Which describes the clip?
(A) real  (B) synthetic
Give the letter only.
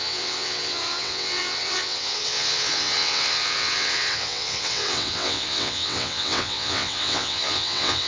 B